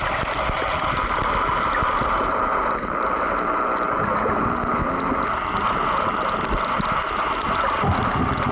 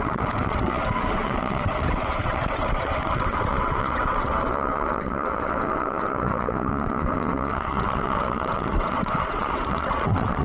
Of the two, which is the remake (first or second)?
second